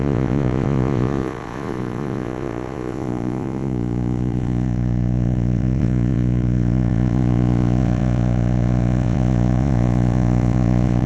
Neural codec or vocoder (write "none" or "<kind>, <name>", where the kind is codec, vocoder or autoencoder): vocoder, Vocos